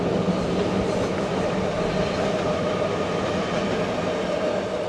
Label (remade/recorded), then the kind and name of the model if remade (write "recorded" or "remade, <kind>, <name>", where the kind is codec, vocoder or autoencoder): recorded